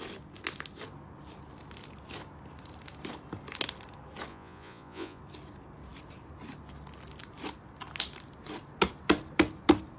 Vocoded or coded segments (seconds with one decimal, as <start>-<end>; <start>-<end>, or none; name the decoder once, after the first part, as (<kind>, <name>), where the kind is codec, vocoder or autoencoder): 4.3-5.2 (vocoder, Vocos)